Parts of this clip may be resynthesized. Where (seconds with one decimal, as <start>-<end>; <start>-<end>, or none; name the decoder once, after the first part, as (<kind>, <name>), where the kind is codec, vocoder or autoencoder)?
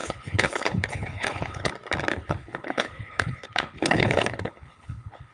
0.0-1.7 (codec, HILCodec); 2.1-5.3